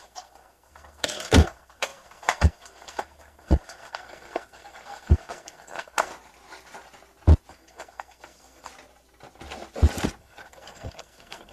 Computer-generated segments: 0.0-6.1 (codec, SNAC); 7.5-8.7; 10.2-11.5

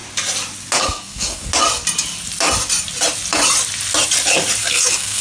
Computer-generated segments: 0.8-1.5 (codec, SNAC); 4.6-5.2

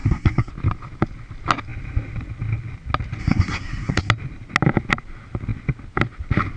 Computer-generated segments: 0.0-0.5 (codec, SNAC); 3.2-4.1

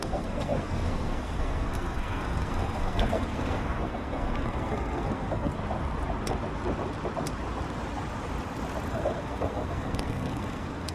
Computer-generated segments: 0.0-5.6 (codec, SNAC); 8.9-10.9

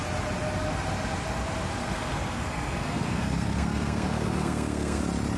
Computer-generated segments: 1.8-5.0 (codec, SNAC)